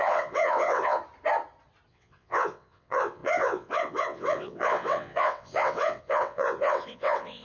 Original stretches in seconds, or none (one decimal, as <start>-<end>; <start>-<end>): 1.0-1.9